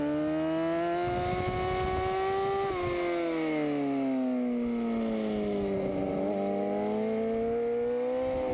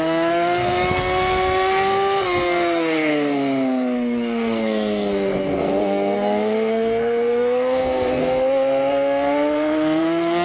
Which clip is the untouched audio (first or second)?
first